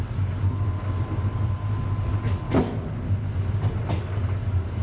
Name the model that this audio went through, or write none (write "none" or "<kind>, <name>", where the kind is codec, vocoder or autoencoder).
none